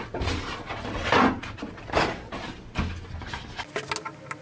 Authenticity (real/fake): real